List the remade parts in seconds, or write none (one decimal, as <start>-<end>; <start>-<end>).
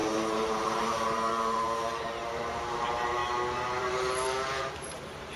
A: 0.0-3.2; 3.8-5.4